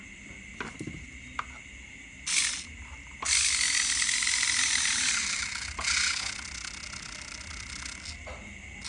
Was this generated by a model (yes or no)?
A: no